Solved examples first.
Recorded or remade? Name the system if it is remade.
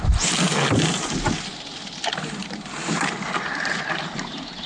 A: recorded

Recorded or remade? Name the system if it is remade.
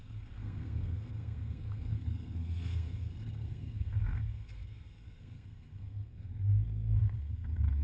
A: remade, codec, SNAC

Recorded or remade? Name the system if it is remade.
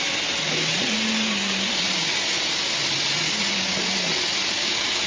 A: recorded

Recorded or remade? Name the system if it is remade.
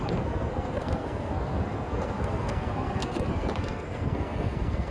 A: remade, codec, SNAC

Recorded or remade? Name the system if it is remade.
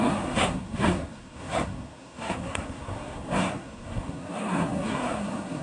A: remade, codec, SNAC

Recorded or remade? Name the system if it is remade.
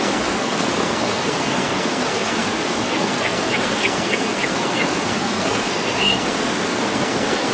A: remade, codec, SNAC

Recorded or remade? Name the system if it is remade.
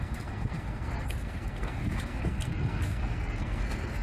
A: remade, codec, SNAC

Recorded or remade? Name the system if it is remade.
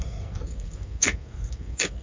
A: remade, codec, SNAC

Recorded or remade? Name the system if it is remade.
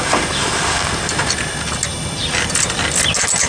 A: recorded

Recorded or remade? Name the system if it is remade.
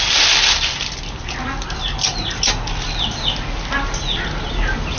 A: recorded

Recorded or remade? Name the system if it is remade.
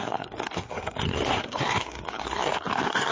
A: remade, codec, SNAC